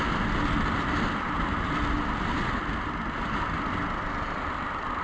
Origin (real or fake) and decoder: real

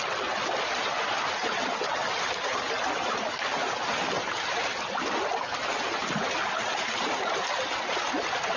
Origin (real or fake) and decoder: real